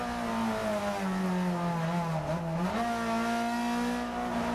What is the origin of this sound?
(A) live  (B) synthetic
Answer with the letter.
A